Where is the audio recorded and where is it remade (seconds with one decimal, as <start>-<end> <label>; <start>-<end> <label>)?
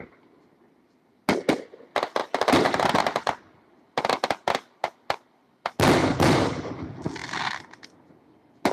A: 0.0-8.7 recorded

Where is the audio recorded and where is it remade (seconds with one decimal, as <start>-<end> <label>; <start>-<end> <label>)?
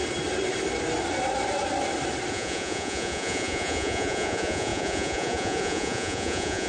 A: 0.0-2.3 recorded; 2.3-6.7 remade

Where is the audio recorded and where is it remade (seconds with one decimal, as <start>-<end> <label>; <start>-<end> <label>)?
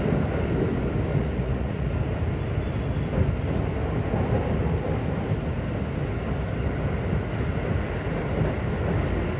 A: 0.0-1.1 recorded; 1.1-1.9 remade; 1.9-9.4 recorded